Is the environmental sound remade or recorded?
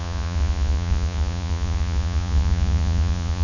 remade